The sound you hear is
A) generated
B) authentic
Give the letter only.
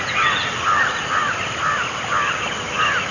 B